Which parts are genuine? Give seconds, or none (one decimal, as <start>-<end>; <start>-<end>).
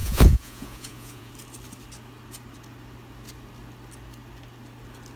1.3-5.2